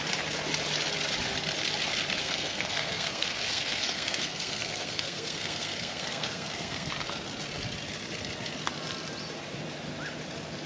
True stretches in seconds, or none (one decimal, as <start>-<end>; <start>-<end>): 0.0-2.2; 6.9-10.7